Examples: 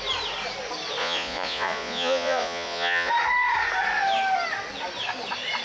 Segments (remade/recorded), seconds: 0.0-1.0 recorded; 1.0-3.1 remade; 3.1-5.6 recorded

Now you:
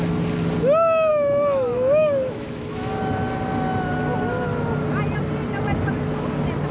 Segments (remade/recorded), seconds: 0.0-1.1 recorded; 1.1-2.9 remade; 2.9-6.7 recorded